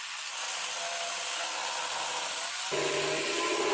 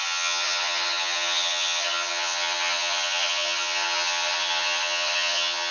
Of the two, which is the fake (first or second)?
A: second